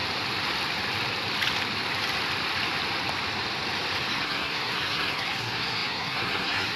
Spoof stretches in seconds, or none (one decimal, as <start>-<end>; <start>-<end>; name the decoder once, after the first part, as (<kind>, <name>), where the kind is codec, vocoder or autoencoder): 4.1-6.8 (codec, SNAC)